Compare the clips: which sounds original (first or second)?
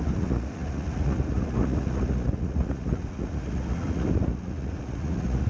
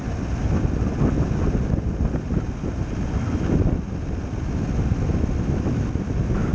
second